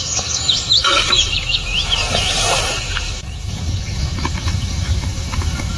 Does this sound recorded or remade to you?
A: remade